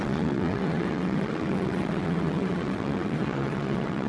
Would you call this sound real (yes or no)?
no